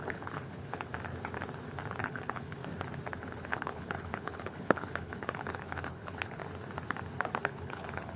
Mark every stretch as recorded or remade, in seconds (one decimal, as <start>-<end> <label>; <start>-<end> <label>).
0.0-0.9 remade; 0.9-2.0 recorded; 2.0-2.6 remade; 2.6-3.2 recorded; 3.2-6.4 remade; 6.4-7.5 recorded; 7.5-8.2 remade